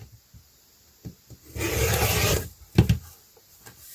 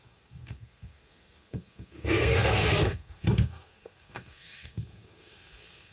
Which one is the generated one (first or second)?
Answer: second